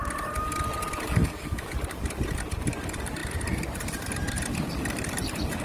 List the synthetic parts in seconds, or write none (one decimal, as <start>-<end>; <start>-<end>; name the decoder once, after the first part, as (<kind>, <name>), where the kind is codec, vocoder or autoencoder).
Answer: 1.2-1.7 (autoencoder, DAC-VAE)